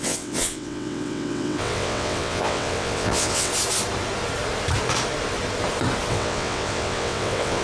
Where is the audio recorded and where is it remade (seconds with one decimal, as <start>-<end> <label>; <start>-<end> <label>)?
0.0-3.5 remade; 3.5-6.1 recorded; 6.1-7.6 remade